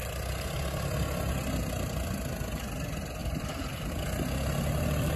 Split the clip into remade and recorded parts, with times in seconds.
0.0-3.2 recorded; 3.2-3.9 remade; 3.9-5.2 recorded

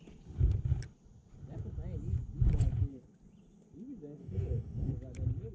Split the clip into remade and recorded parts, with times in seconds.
0.0-4.2 recorded; 4.2-4.9 remade; 4.9-5.5 recorded

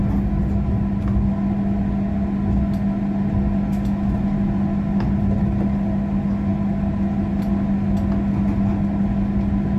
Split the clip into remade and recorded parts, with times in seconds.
0.0-9.8 recorded

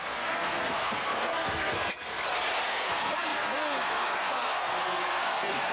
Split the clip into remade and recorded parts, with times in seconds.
0.0-2.2 remade; 2.2-2.7 recorded; 2.7-5.7 remade

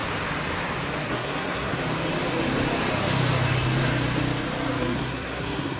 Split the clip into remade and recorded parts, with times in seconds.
0.0-1.0 recorded; 1.0-1.8 remade; 1.8-4.8 recorded; 4.8-5.8 remade

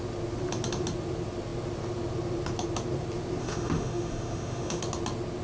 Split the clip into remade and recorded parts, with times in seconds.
0.0-3.4 recorded; 3.4-4.8 remade; 4.8-5.4 recorded

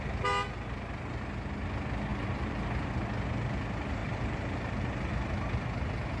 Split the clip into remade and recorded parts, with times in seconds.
0.0-2.1 recorded; 2.1-2.9 remade; 2.9-4.0 recorded; 4.0-5.1 remade; 5.1-6.2 recorded